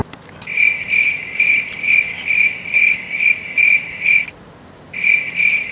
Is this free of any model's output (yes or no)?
yes